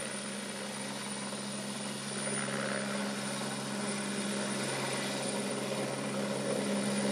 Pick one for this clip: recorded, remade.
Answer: recorded